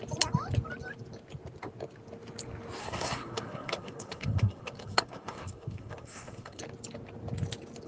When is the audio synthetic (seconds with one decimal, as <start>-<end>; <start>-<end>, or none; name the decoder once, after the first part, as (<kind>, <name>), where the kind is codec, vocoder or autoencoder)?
2.8-6.6 (codec, SNAC)